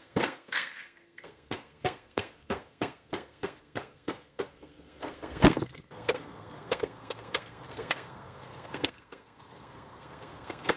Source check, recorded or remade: remade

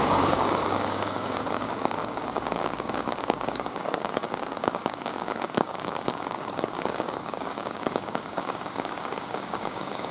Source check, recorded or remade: remade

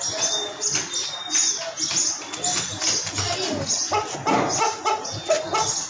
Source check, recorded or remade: recorded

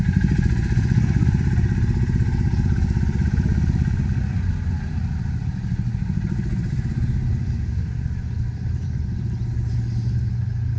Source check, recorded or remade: recorded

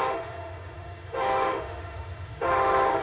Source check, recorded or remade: remade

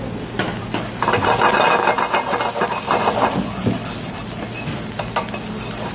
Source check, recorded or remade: recorded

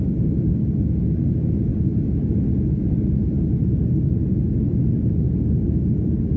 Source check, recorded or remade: recorded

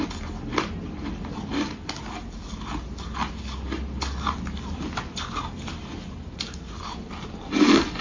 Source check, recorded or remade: recorded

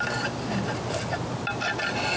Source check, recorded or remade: recorded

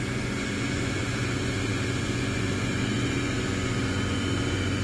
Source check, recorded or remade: remade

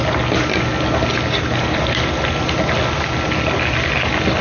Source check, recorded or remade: recorded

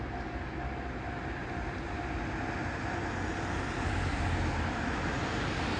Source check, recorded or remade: recorded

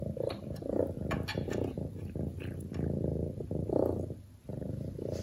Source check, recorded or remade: recorded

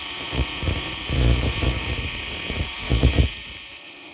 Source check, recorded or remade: remade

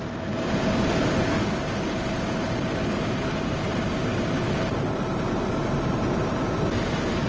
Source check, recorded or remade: recorded